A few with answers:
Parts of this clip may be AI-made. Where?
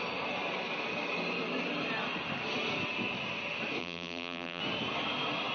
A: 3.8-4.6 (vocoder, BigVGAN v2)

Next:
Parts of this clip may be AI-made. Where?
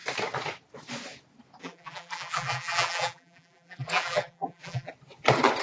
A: 1.6-4.9 (vocoder, BigVGAN v2)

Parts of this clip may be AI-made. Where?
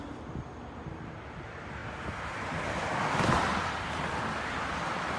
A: 1.8-4.1 (vocoder, BigVGAN v2)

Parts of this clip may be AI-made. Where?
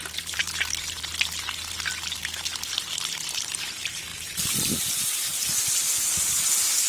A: 0.0-1.1 (vocoder, BigVGAN v2); 2.9-6.9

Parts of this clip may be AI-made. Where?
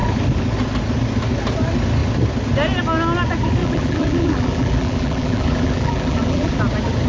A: 3.6-6.6 (vocoder, BigVGAN v2)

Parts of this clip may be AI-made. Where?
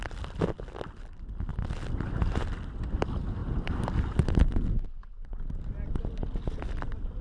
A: none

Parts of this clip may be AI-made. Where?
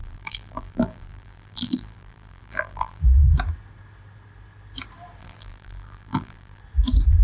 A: 0.0-3.0 (vocoder, BigVGAN v2); 5.2-6.6